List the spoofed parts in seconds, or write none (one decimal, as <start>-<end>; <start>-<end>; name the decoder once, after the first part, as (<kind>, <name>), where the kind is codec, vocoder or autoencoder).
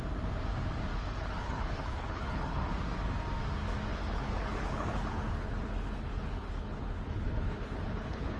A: 1.0-2.7 (codec, HILCodec); 3.9-8.4